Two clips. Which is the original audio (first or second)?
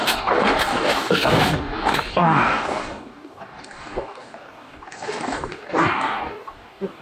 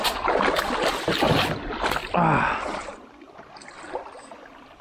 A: second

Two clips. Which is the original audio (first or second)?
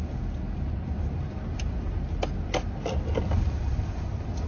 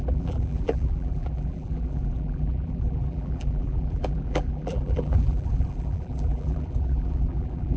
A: first